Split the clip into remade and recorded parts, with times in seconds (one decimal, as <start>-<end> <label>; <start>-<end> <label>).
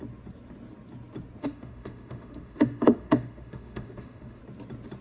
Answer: 0.0-1.4 recorded; 1.4-4.4 remade; 4.4-5.0 recorded